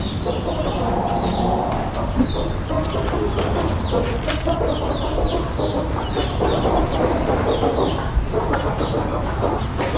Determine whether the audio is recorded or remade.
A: recorded